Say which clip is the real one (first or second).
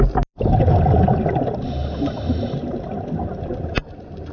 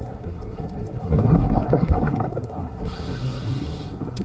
first